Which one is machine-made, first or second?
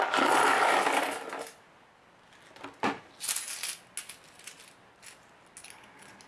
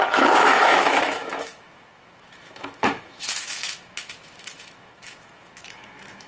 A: second